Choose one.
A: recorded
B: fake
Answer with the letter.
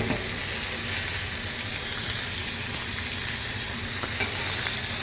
A